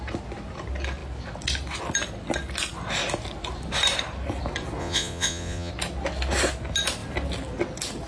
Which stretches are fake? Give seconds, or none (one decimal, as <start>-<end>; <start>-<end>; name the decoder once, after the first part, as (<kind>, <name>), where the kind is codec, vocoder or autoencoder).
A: 4.8-5.7 (vocoder, Vocos)